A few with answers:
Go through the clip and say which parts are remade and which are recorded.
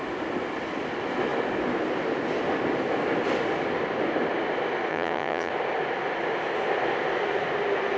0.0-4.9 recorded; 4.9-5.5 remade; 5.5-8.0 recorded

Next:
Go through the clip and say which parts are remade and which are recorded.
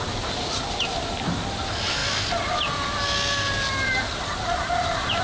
0.0-5.2 recorded